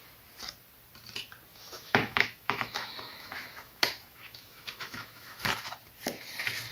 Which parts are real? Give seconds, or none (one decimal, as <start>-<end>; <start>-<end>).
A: 0.0-1.5; 5.5-6.7